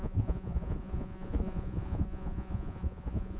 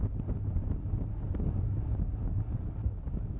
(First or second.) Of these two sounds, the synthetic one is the first